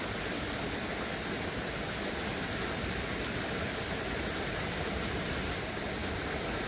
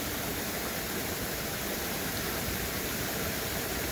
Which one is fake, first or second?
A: second